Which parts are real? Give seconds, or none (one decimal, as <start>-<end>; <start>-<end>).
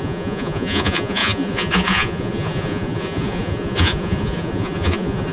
none